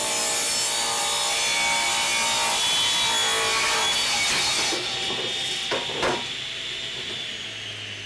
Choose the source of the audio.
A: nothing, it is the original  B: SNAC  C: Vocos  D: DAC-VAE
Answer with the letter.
A